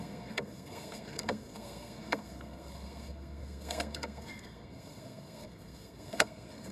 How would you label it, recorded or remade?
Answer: remade